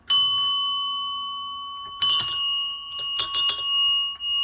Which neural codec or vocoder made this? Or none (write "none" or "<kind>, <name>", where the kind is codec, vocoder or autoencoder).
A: none